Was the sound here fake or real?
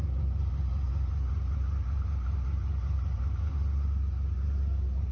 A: real